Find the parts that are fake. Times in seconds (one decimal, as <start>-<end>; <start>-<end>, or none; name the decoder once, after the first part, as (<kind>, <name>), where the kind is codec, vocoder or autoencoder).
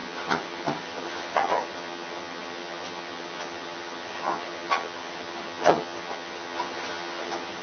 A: 0.0-7.6 (vocoder, HiFi-GAN)